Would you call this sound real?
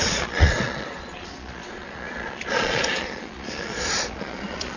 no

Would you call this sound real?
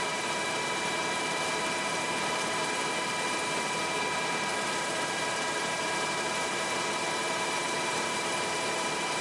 no